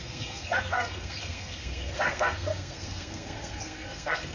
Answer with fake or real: fake